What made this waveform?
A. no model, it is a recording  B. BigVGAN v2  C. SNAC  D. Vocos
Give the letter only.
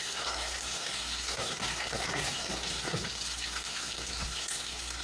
C